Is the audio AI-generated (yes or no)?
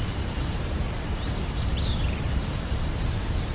yes